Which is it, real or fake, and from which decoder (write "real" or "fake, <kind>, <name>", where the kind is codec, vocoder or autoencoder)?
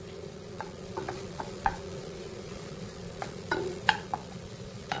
fake, vocoder, Vocos